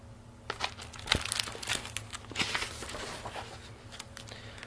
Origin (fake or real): real